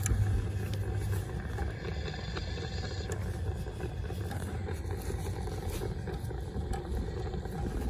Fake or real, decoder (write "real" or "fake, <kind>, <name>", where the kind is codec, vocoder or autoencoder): real